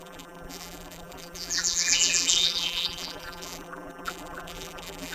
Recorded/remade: remade